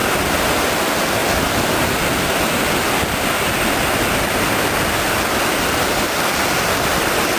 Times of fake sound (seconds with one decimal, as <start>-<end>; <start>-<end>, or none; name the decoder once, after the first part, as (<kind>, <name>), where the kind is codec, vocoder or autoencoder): 0.0-1.2 (vocoder, BigVGAN v2); 5.6-7.4